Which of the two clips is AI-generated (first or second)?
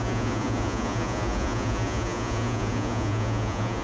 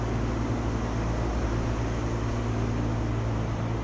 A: first